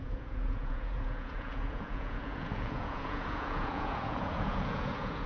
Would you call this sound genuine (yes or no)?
no